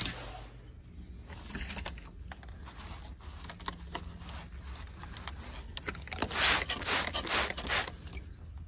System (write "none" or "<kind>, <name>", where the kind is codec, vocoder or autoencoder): none